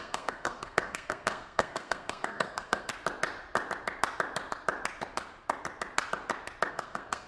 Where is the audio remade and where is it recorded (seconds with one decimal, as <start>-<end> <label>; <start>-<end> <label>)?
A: 0.0-2.9 remade; 2.9-6.7 recorded; 6.7-7.3 remade